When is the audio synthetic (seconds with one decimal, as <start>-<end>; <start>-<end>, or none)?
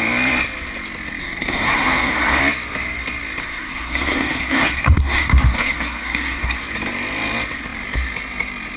1.2-2.4; 3.4-6.6